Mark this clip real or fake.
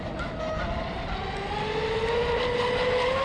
real